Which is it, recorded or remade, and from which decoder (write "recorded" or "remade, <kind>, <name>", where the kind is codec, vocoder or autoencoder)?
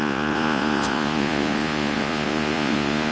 remade, vocoder, Vocos